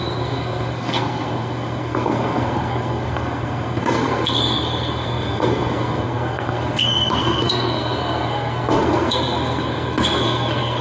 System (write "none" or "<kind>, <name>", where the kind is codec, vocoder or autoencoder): codec, SNAC